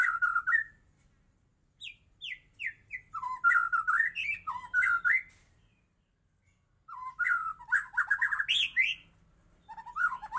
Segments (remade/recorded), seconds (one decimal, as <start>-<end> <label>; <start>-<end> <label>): 0.0-10.4 recorded